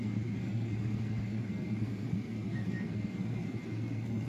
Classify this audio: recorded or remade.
remade